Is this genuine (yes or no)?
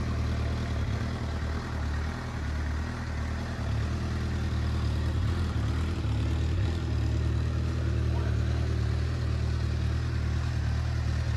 yes